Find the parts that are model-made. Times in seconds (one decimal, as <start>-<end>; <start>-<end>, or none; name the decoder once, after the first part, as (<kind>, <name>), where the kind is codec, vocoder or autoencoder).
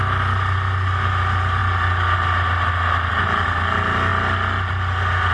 none